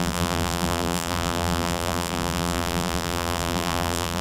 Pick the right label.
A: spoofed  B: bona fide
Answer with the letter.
A